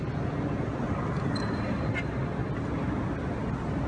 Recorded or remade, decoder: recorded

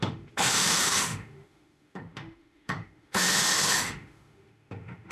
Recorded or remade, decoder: remade, autoencoder, DAC-VAE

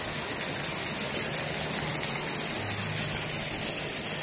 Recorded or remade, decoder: recorded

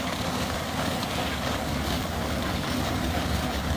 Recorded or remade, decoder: remade, codec, DAC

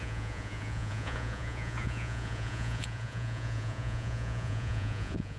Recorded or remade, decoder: remade, vocoder, Vocos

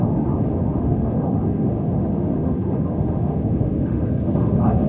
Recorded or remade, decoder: remade, autoencoder, DAC-VAE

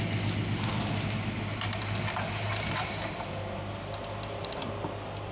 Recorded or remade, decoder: recorded